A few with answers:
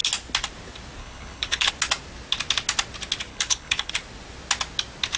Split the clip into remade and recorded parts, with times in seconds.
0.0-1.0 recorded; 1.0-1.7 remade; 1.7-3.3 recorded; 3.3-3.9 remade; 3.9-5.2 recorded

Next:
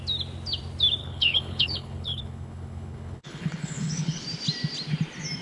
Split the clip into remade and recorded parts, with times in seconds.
0.0-1.0 recorded; 1.0-4.2 remade; 4.2-5.4 recorded

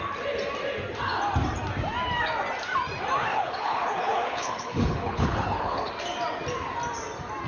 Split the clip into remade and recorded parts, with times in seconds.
0.0-3.3 recorded; 3.3-5.9 remade; 5.9-7.5 recorded

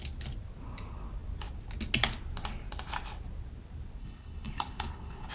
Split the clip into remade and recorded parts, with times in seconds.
0.0-4.0 recorded; 4.0-5.3 remade

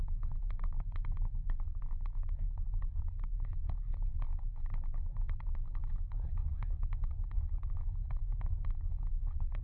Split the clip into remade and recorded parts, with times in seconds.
0.0-9.6 remade

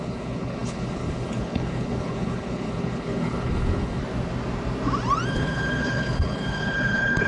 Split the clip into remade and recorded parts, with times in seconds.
0.0-4.0 remade; 4.0-5.3 recorded; 5.3-7.3 remade

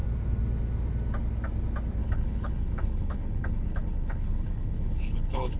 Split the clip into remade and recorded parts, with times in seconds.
0.0-2.0 recorded; 2.0-5.6 remade

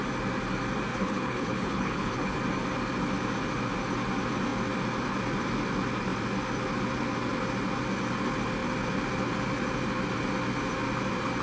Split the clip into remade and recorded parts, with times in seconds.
0.0-0.9 recorded; 0.9-2.4 remade; 2.4-11.4 recorded